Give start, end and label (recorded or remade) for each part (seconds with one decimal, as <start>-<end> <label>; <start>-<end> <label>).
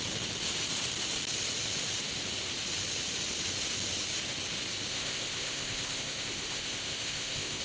0.0-4.9 recorded; 4.9-7.6 remade